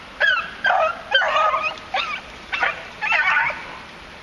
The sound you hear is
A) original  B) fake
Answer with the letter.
B